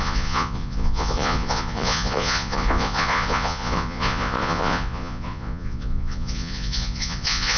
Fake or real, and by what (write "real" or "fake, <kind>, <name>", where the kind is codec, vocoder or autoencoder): fake, vocoder, Vocos